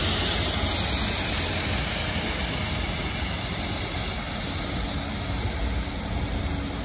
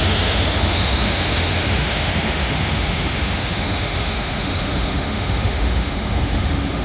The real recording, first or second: first